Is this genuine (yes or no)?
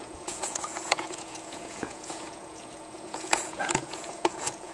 no